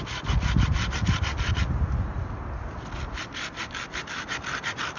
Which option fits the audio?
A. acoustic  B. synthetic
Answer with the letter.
A